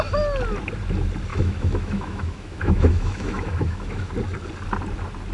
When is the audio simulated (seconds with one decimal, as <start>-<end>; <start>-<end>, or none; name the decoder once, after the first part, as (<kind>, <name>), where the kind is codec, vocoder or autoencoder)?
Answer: 1.3-4.1 (autoencoder, DAC-VAE)